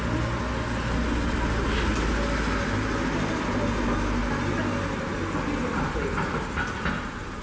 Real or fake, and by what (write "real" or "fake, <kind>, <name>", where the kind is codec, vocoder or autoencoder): real